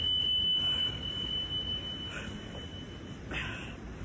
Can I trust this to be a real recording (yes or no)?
yes